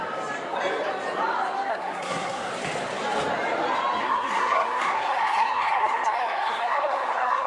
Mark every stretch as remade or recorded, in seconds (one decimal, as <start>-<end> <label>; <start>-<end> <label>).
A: 0.0-1.7 recorded; 1.7-2.5 remade; 2.5-4.0 recorded; 4.0-7.5 remade